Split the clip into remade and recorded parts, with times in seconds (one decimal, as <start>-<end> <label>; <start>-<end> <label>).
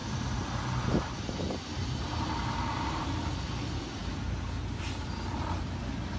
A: 0.0-3.0 remade; 3.0-6.2 recorded